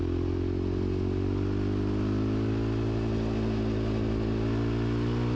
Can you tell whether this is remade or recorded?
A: recorded